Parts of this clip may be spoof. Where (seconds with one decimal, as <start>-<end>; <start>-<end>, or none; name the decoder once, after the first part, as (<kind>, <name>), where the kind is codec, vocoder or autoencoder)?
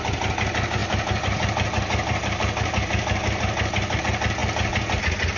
0.8-4.0 (vocoder, BigVGAN v2)